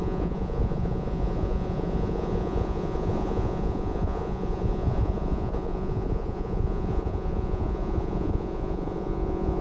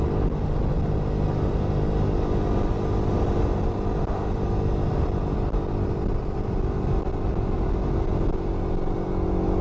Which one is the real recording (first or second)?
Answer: second